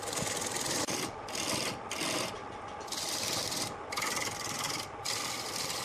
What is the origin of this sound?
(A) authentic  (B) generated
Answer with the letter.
A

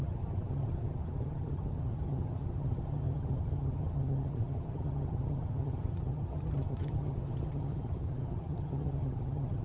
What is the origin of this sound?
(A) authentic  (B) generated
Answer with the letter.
B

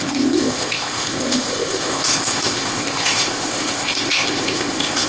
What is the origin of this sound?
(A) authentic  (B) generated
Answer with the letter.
B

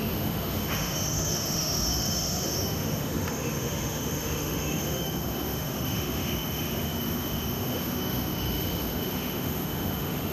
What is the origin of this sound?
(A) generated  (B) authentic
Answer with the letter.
A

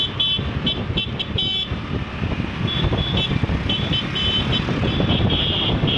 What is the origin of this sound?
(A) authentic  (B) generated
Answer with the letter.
A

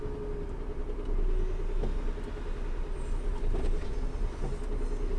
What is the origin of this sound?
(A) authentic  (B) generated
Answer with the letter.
A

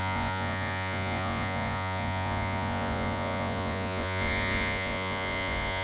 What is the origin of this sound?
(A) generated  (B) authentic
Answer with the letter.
A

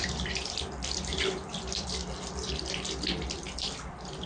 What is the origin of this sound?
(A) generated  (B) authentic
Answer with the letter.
A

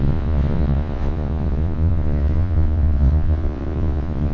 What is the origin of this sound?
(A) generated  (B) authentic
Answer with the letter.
A